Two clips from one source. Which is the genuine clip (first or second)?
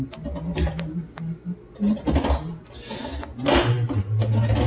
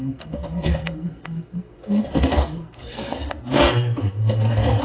first